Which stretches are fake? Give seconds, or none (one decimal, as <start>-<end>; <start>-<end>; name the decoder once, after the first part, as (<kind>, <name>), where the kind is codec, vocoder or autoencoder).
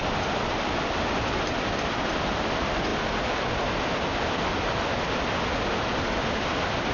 none